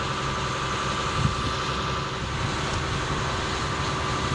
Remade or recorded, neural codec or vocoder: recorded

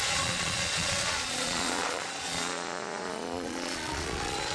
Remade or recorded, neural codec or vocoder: remade, vocoder, Vocos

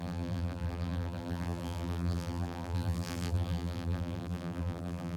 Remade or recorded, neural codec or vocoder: remade, vocoder, BigVGAN v2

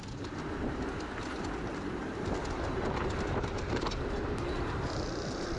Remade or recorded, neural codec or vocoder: recorded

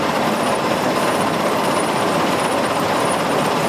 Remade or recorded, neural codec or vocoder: remade, vocoder, BigVGAN v2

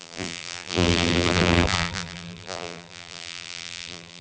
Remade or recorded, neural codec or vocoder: remade, vocoder, BigVGAN v2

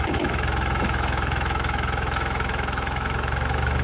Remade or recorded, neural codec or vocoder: remade, autoencoder, DAC-VAE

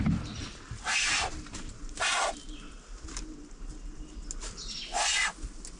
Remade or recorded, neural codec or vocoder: recorded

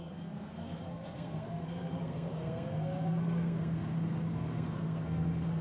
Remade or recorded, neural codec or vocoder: remade, codec, SNAC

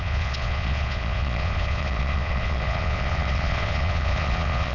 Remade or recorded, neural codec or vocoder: remade, vocoder, Vocos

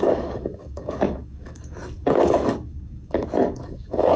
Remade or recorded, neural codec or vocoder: remade, codec, DAC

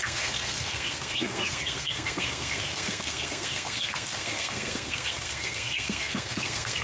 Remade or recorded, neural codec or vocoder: remade, codec, SNAC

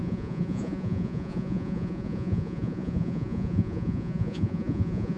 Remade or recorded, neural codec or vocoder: remade, vocoder, Vocos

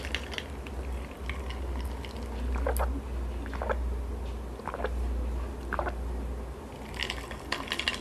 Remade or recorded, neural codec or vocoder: recorded